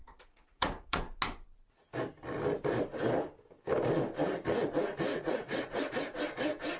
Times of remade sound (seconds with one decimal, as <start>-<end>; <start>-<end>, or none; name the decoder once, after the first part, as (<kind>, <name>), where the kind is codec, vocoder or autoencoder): 0.0-1.0 (vocoder, Vocos); 5.1-5.9

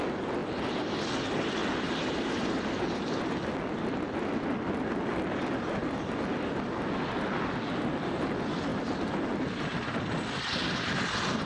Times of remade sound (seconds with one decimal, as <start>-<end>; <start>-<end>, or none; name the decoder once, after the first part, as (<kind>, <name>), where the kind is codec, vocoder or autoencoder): none

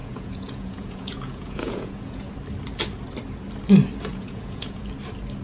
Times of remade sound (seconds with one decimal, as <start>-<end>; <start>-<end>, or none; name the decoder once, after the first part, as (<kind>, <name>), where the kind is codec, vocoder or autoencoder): 0.0-2.3 (vocoder, Vocos); 4.1-4.8

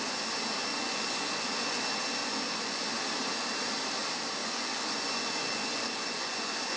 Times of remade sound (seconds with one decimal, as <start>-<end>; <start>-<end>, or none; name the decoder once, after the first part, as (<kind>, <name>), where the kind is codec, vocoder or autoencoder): 0.7-1.8 (vocoder, Vocos); 2.2-2.9; 4.4-6.8

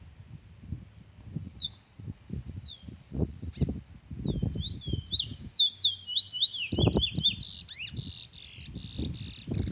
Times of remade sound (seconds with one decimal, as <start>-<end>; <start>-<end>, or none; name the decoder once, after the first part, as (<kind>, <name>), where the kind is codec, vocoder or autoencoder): 1.4-3.5 (vocoder, Vocos)

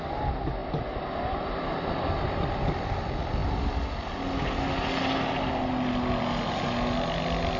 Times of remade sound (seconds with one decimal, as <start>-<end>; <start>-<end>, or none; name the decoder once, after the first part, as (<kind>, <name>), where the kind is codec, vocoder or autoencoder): none

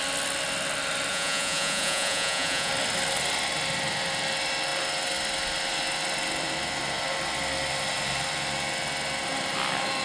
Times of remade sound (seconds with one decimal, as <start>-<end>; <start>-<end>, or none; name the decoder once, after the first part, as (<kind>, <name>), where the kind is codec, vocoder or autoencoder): 1.1-2.7 (vocoder, Vocos)